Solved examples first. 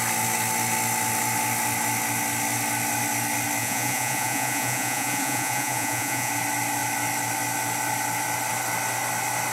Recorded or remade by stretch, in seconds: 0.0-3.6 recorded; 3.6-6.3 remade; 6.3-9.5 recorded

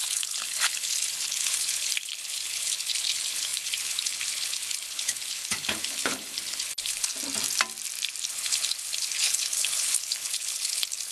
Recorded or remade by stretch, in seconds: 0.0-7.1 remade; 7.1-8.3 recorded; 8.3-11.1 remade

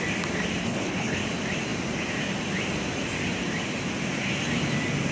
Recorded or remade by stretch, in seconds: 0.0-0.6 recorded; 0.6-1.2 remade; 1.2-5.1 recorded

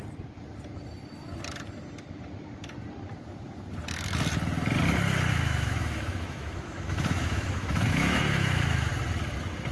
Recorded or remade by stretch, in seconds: 0.0-5.3 recorded; 5.3-8.9 remade; 8.9-9.7 recorded

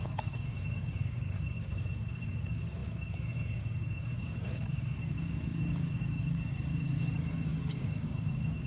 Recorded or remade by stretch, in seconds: 0.0-8.7 remade

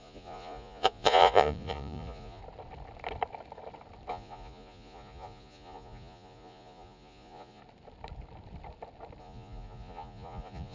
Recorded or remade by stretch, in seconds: 0.0-2.4 remade; 2.4-4.1 recorded; 4.1-7.6 remade; 7.6-9.2 recorded; 9.2-10.7 remade

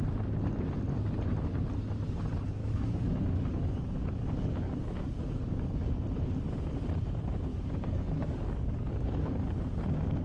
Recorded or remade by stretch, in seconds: 0.0-2.6 recorded; 2.6-5.9 remade; 5.9-7.5 recorded; 7.5-9.6 remade; 9.6-10.2 recorded

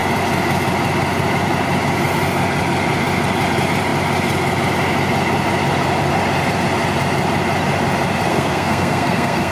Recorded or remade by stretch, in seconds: 0.0-8.3 recorded; 8.3-9.5 remade